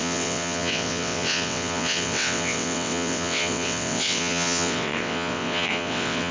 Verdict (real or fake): fake